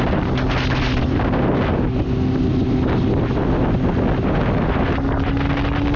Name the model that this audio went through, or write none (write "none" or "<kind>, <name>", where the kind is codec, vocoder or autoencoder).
none